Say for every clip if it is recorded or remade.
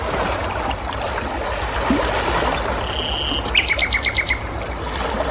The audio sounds recorded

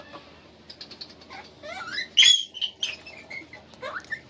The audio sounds recorded